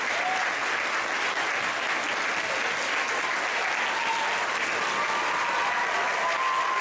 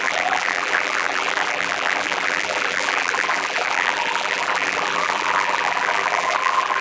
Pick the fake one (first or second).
second